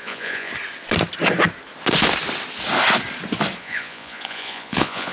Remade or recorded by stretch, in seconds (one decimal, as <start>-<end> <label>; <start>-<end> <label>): 0.0-0.5 remade; 0.5-3.6 recorded; 3.6-5.1 remade